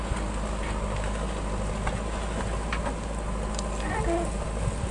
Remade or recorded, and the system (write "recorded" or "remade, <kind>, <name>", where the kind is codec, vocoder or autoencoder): recorded